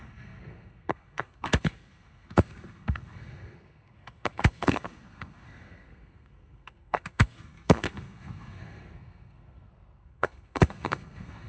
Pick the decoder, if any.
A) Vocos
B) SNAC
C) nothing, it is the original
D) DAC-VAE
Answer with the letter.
B